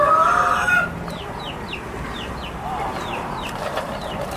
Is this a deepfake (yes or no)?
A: yes